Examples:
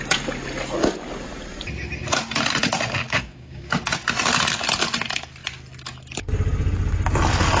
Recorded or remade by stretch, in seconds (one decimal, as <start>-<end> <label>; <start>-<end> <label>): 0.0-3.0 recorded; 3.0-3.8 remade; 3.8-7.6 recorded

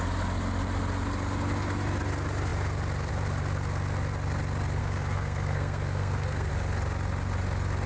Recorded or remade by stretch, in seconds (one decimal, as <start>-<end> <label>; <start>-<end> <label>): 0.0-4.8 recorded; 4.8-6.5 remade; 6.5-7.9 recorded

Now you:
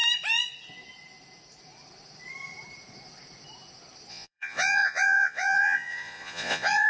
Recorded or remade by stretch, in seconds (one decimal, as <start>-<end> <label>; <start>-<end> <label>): 0.0-4.1 recorded; 4.1-6.9 remade

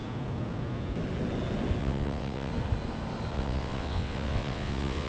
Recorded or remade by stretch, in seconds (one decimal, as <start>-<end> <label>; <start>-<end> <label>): 0.0-1.8 recorded; 1.8-2.5 remade; 2.5-3.3 recorded; 3.3-5.1 remade